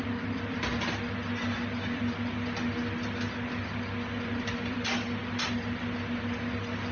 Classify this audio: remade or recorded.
recorded